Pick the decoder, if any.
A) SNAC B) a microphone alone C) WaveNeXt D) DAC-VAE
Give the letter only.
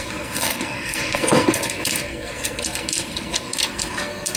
A